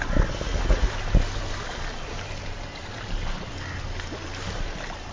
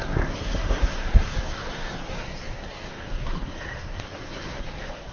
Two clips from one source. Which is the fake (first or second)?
second